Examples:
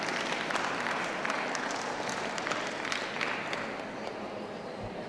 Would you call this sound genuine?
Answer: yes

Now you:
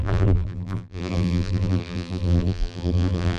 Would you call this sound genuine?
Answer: no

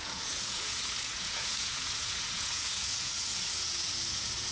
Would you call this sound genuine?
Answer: no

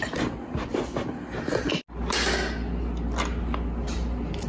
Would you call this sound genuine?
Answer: yes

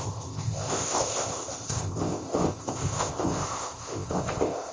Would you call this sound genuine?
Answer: no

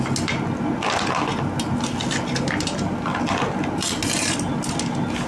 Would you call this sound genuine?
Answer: yes